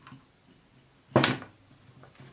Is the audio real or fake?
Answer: real